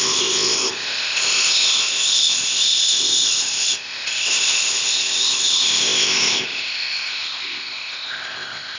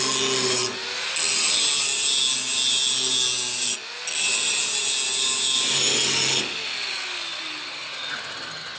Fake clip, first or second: first